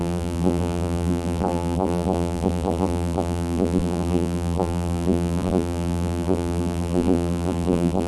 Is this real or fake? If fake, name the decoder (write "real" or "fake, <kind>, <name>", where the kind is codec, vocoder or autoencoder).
fake, vocoder, BigVGAN v2